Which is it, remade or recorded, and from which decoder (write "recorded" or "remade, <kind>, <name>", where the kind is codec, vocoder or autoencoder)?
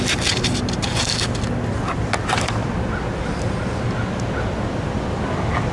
recorded